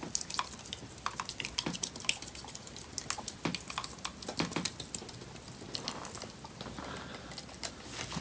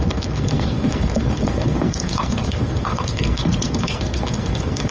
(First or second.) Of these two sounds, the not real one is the second